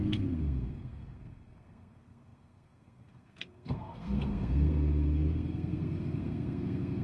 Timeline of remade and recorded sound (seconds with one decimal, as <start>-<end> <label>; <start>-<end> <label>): 0.0-7.0 remade